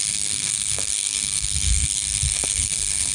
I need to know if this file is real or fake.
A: fake